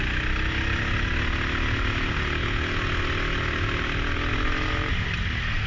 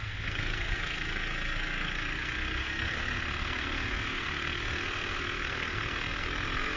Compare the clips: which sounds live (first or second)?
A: first